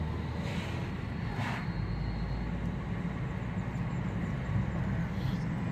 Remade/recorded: recorded